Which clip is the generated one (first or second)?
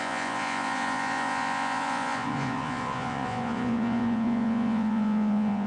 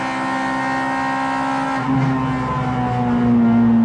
first